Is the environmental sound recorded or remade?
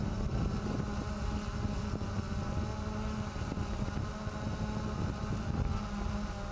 recorded